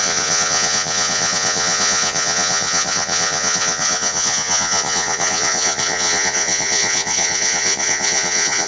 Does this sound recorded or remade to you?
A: remade